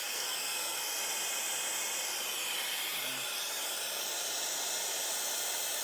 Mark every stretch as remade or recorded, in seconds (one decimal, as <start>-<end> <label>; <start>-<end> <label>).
0.0-1.0 remade; 1.0-5.8 recorded